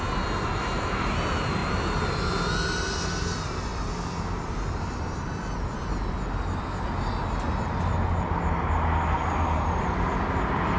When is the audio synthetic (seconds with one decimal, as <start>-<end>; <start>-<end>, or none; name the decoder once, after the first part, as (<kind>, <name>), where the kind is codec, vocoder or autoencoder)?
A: none